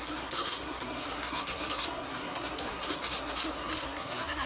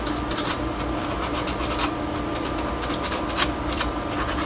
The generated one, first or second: first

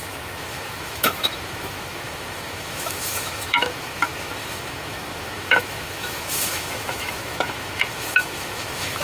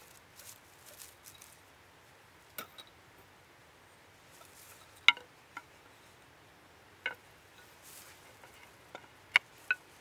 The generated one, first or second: first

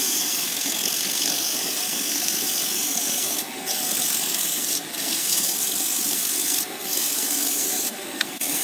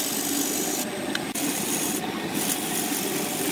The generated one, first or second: first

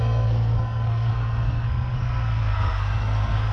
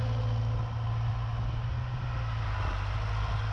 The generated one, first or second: first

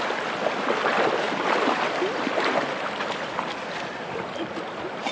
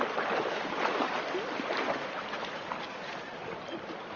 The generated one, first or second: second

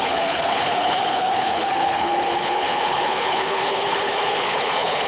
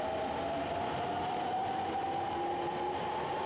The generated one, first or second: first